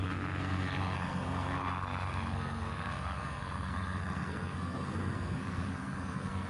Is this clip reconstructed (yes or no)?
yes